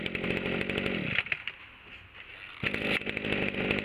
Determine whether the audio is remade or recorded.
recorded